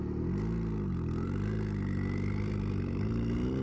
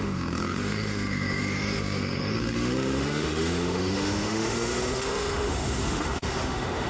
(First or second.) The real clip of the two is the first